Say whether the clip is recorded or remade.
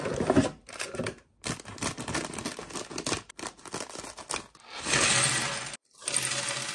recorded